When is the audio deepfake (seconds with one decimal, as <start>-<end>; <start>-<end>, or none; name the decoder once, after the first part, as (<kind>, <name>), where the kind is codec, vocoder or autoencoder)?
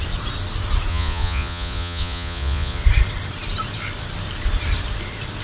0.9-2.8 (vocoder, Vocos)